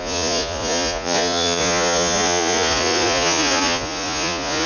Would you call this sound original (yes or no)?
no